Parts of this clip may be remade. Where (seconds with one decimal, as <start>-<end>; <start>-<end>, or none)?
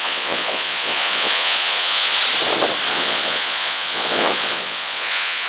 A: 0.0-2.2; 2.9-5.5